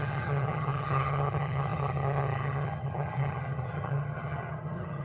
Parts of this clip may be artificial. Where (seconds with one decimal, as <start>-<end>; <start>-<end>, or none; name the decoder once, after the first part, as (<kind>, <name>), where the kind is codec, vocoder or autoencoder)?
0.0-5.0 (vocoder, HiFi-GAN)